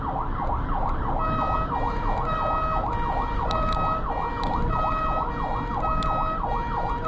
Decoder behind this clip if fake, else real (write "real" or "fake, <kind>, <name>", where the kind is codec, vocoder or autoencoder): real